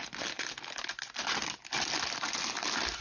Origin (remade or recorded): recorded